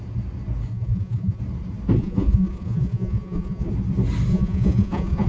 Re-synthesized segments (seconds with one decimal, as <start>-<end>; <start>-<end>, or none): 0.7-1.4; 2.0-3.7; 4.3-5.3